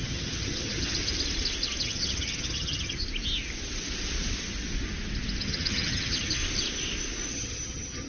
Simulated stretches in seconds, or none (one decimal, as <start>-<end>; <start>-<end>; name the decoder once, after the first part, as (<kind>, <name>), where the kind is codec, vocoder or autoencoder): 0.0-1.0 (vocoder, HiFi-GAN); 1.8-3.0; 5.4-6.4; 7.3-8.1